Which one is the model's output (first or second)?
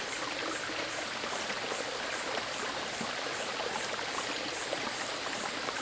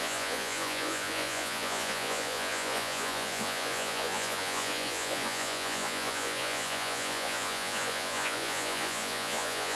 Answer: second